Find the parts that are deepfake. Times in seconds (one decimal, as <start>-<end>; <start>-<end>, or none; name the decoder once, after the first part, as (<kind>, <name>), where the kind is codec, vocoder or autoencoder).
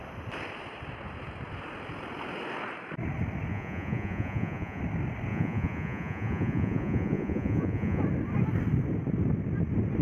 3.5-4.8 (vocoder, Vocos); 5.3-8.0